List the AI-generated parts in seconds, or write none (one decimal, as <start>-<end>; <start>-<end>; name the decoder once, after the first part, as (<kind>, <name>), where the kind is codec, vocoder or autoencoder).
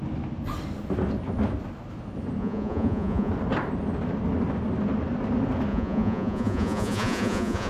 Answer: 2.4-3.3 (vocoder, Vocos); 5.7-7.7